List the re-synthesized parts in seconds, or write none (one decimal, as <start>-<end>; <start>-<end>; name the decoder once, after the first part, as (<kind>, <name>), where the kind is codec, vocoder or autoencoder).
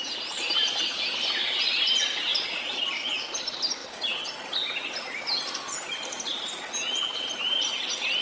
none